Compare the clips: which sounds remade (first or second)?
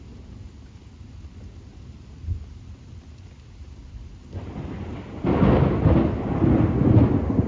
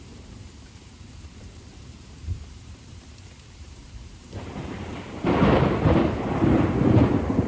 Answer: second